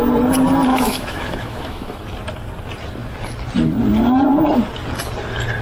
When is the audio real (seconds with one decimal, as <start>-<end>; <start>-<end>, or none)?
0.0-0.7; 2.0-5.6